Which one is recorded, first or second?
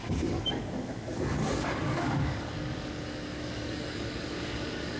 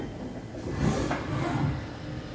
second